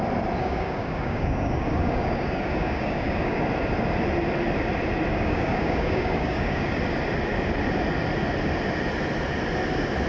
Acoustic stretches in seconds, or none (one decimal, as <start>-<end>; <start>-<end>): 0.0-0.4; 3.4-5.1; 6.7-10.1